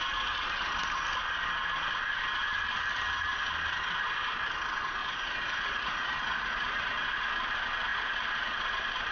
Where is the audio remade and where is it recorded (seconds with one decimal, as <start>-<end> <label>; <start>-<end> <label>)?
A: 0.0-5.0 recorded; 5.0-7.3 remade; 7.3-7.9 recorded; 7.9-8.7 remade; 8.7-9.1 recorded